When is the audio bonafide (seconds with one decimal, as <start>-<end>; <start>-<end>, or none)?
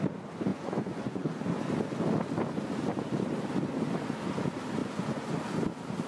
0.0-0.5; 1.3-4.8; 5.4-6.1